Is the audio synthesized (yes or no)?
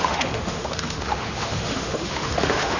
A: yes